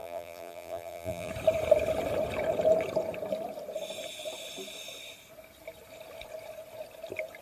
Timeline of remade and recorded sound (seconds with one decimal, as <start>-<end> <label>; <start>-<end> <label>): 0.0-1.3 remade; 1.3-7.4 recorded